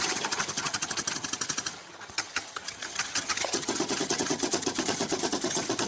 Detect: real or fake fake